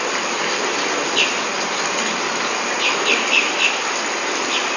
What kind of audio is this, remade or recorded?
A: recorded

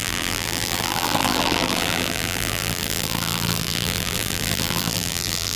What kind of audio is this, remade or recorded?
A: remade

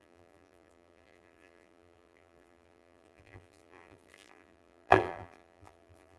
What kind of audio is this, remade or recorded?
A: remade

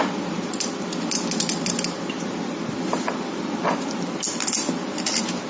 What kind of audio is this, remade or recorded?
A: recorded